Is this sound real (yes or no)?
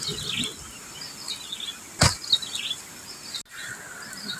yes